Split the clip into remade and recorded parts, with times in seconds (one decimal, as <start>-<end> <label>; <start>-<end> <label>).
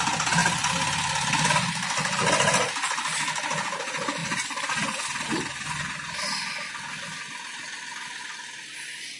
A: 0.0-9.2 recorded